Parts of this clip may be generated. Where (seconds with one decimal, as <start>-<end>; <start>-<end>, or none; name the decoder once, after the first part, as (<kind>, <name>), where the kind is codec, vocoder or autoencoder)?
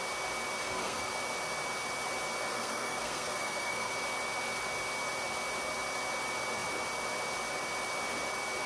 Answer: 0.6-1.1 (codec, SNAC); 2.5-3.9